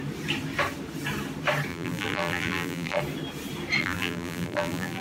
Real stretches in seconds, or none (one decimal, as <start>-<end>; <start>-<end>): 0.0-1.7; 3.0-3.8